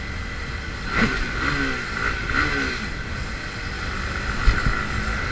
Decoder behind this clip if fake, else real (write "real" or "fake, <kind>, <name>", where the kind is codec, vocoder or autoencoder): real